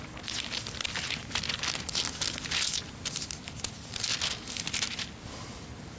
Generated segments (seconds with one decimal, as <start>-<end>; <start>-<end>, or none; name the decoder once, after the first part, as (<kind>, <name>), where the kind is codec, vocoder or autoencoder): none